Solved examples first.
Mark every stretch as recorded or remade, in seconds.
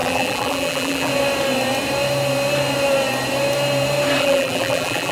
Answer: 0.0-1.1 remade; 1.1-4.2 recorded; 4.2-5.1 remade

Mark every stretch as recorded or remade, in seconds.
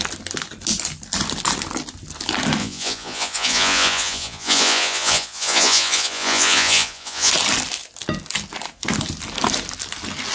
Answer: 0.0-2.6 recorded; 2.6-7.3 remade; 7.3-10.3 recorded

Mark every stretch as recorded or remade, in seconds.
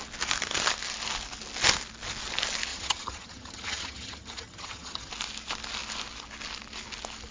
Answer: 0.0-2.7 recorded; 2.7-5.1 remade; 5.1-7.3 recorded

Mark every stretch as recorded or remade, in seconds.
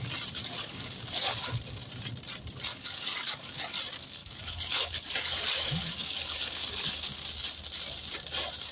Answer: 0.0-0.4 recorded; 0.4-1.6 remade; 1.6-2.7 recorded; 2.7-3.8 remade; 3.8-4.2 recorded; 4.2-7.1 remade; 7.1-8.7 recorded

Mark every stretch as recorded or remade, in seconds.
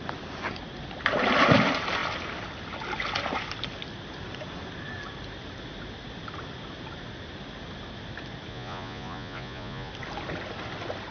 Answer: 0.0-8.5 recorded; 8.5-9.9 remade; 9.9-11.1 recorded